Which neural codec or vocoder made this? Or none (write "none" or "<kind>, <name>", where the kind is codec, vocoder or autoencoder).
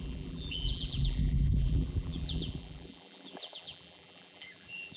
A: vocoder, BigVGAN v2